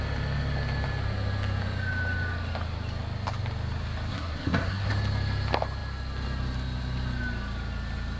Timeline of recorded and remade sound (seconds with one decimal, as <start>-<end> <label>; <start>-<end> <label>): 0.0-4.1 recorded; 4.1-4.9 remade; 4.9-8.2 recorded